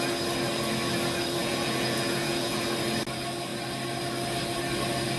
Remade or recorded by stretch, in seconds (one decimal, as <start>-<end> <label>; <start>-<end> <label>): 0.0-1.4 recorded; 1.4-2.6 remade; 2.6-5.2 recorded